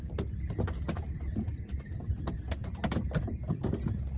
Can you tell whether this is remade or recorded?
recorded